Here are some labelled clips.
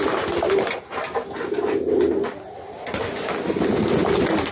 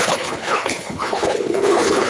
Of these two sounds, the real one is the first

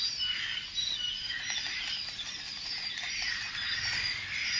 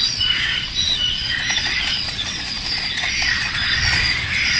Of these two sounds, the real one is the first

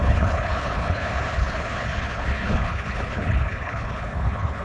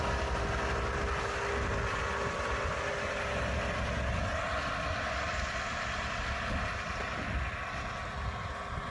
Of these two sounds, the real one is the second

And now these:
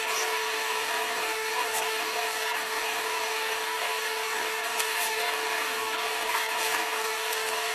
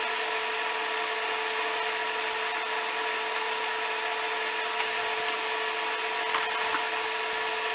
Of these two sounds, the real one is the second